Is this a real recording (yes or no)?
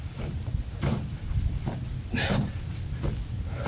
yes